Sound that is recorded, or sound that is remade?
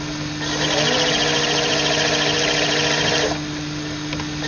recorded